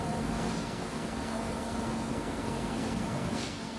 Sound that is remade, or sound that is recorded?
remade